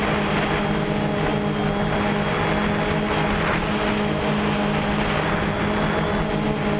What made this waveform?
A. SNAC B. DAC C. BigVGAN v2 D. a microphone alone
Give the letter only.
D